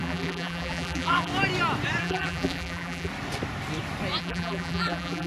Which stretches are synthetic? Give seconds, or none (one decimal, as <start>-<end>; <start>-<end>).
0.0-1.3; 2.0-3.1; 4.2-5.3